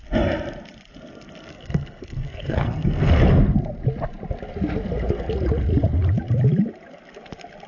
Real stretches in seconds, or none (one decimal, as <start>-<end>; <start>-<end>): 0.0-1.5; 3.0-7.7